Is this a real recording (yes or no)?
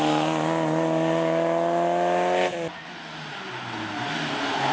yes